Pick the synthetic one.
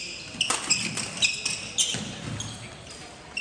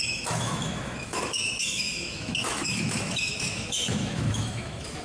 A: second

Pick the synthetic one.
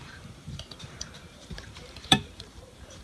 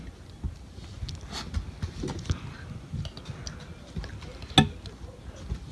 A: first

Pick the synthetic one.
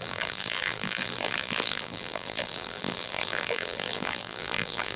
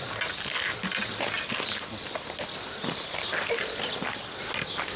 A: first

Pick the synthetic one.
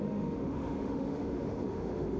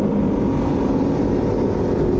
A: first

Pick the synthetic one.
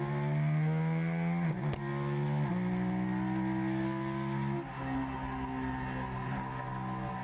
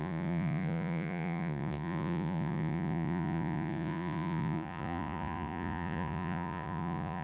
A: second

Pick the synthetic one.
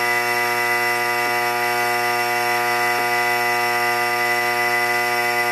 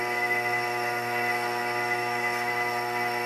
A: second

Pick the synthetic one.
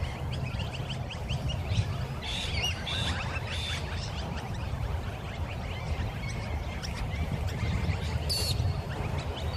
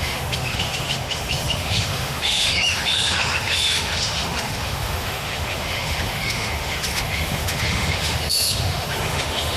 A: second